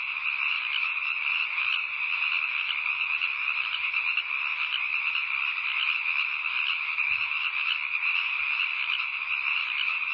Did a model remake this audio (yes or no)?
no